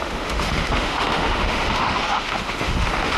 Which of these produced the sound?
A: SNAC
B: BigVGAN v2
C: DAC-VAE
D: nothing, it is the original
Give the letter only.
C